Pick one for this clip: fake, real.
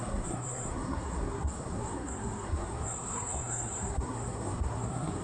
fake